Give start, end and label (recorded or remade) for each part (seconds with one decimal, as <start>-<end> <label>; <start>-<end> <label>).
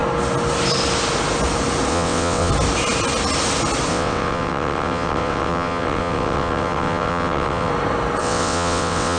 0.0-1.9 recorded; 1.9-2.5 remade; 2.5-3.9 recorded; 3.9-7.7 remade; 7.7-8.2 recorded; 8.2-9.2 remade